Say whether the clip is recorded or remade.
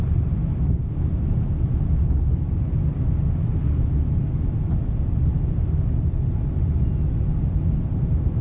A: recorded